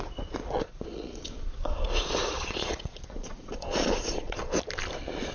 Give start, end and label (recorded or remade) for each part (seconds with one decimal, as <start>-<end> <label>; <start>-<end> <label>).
0.0-4.4 remade; 4.4-5.3 recorded